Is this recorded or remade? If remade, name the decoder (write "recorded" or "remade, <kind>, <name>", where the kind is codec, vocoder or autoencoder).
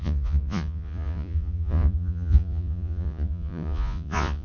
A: remade, vocoder, Vocos